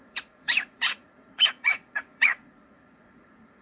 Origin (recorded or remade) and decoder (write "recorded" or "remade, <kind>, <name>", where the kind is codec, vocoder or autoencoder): remade, vocoder, Vocos